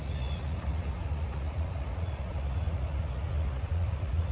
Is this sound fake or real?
fake